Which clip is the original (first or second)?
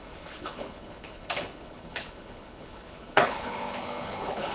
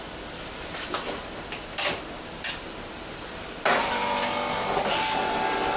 second